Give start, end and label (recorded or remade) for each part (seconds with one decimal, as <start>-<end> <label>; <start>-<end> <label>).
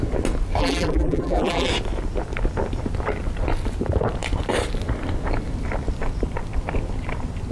0.0-0.6 recorded; 0.6-1.7 remade; 1.7-7.5 recorded